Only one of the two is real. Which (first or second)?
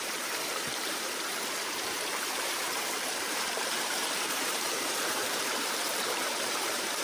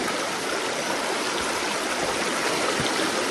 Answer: second